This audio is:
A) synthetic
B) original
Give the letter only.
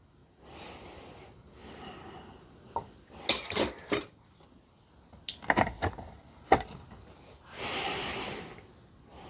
B